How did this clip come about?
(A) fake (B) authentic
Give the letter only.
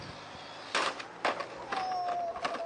B